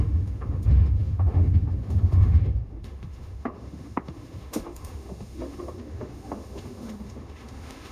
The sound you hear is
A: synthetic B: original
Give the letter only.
A